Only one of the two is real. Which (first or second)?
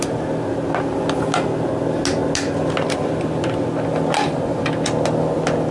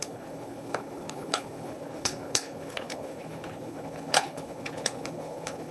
first